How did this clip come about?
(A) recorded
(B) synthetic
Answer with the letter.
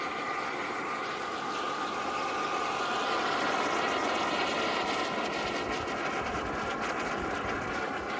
A